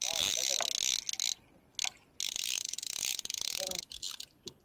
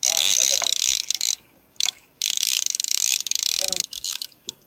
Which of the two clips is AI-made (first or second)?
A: second